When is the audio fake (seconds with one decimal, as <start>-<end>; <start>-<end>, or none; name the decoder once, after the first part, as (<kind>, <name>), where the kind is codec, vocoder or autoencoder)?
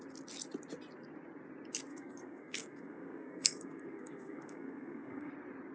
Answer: 1.9-5.3 (codec, SNAC)